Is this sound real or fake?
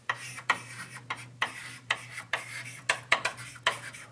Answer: fake